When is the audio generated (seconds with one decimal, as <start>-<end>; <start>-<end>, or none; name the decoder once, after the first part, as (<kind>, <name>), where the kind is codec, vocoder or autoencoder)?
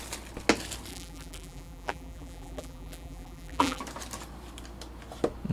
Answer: 0.9-3.8 (vocoder, BigVGAN v2)